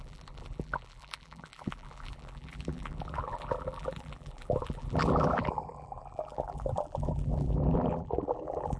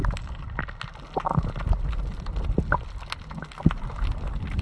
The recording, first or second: second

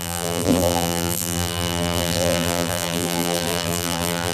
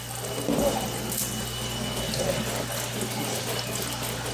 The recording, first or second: second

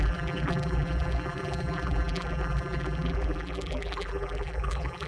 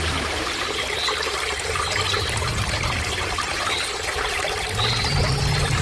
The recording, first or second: second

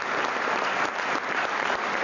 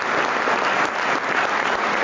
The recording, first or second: second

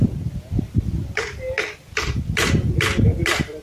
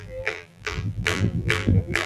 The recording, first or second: first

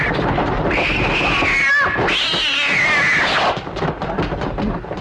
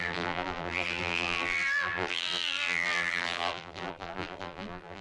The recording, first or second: first